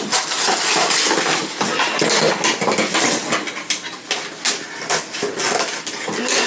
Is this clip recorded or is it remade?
recorded